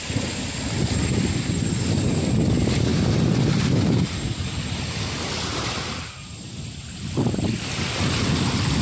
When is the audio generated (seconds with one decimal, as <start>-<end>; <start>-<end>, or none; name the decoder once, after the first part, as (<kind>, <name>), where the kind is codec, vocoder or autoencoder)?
none